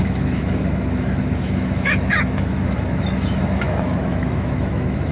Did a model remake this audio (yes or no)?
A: yes